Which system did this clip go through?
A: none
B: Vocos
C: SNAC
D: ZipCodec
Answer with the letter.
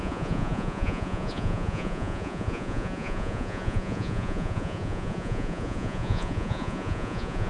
B